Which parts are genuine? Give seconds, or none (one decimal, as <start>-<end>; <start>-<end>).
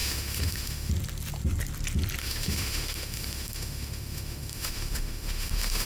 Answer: 0.9-2.2